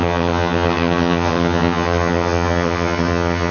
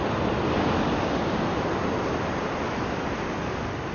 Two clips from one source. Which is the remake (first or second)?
first